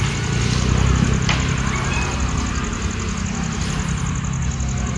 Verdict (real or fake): real